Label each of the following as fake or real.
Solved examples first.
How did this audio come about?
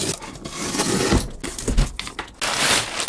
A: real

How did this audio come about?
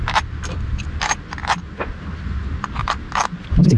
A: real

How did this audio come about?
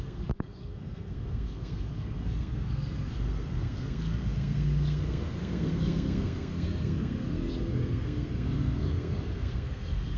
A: fake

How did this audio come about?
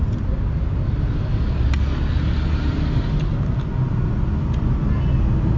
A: real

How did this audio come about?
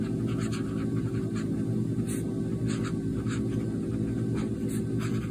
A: real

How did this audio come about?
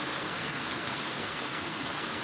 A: fake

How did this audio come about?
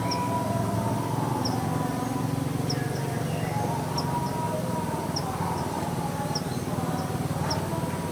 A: real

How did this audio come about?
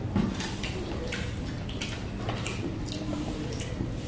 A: real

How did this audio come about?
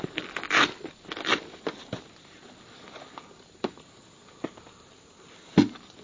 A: real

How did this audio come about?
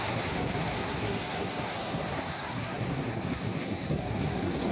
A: fake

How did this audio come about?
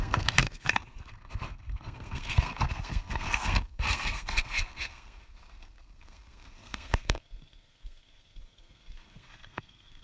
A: fake